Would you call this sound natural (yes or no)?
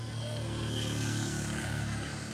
no